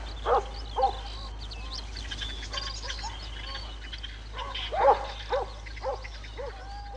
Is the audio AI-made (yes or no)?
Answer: no